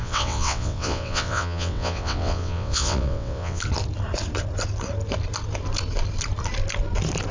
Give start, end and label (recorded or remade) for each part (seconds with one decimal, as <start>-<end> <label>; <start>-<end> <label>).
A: 0.0-3.6 remade; 3.6-7.3 recorded

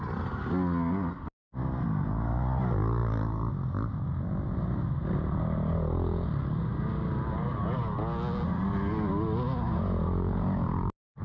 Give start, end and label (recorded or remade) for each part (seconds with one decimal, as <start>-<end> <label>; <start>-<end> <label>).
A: 0.0-11.2 recorded